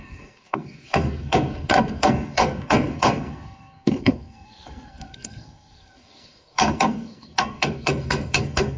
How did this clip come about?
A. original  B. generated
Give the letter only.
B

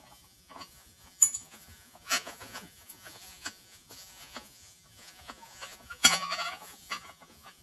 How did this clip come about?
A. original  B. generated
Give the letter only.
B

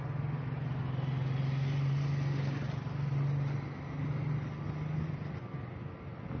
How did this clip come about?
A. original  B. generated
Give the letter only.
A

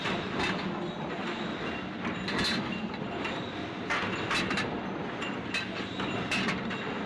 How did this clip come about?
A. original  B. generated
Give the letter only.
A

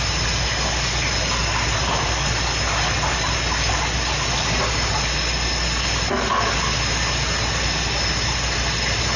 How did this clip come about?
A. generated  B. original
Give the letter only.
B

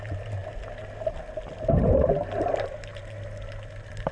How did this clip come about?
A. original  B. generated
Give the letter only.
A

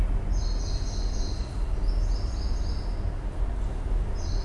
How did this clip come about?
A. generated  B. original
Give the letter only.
B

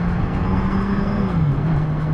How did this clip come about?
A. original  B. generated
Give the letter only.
B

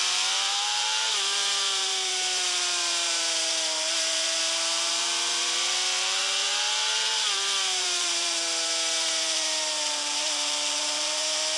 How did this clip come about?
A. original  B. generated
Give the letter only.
B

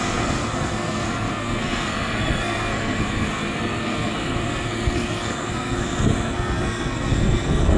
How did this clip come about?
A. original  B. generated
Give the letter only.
B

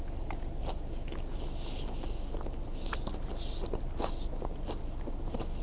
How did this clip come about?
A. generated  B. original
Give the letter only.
B